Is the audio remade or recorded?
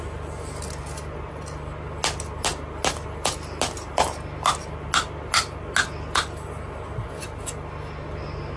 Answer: recorded